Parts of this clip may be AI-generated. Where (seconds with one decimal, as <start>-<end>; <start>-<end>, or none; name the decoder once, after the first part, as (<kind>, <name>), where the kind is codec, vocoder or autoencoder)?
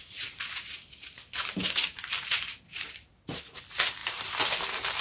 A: 2.7-3.6 (vocoder, BigVGAN v2); 4.0-4.5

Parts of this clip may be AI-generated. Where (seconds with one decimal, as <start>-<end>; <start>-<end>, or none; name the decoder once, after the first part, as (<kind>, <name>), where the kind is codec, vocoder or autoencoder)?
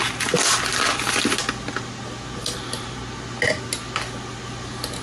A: none